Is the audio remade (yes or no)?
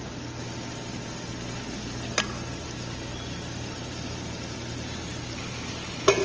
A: no